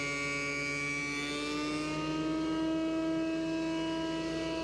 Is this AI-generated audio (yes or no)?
no